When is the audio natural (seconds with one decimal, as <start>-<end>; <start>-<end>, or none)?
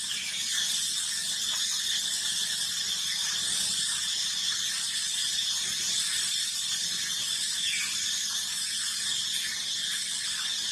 0.0-10.7